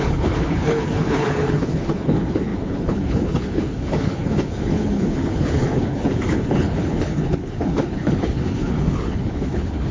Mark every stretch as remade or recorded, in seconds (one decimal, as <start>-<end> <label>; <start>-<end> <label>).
0.0-9.9 remade